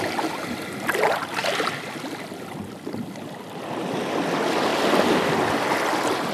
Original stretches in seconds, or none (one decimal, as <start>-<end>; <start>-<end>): 0.0-6.3